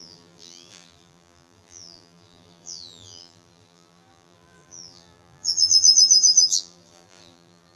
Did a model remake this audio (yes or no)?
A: yes